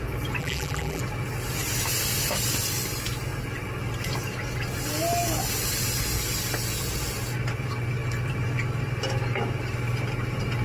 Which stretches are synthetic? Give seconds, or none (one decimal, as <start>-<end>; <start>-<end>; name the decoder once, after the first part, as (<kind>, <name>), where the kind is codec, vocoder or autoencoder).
0.4-1.0 (vocoder, BigVGAN v2)